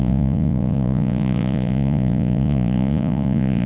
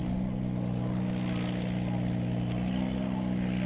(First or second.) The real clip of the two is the second